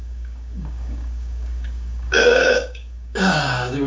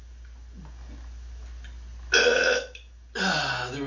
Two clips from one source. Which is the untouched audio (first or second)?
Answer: second